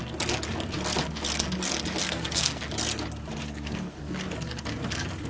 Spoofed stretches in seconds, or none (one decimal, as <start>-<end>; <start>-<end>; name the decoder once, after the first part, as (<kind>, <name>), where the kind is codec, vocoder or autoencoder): 2.0-2.6 (codec, SNAC); 3.4-4.0